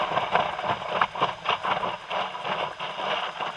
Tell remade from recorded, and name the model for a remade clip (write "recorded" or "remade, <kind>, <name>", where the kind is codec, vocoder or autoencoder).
recorded